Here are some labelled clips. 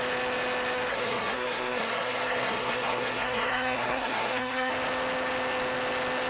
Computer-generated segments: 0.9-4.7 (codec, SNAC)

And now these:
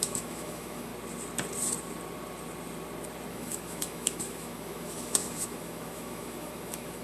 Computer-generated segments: 0.0-0.9 (autoencoder, DAC-VAE); 3.3-7.0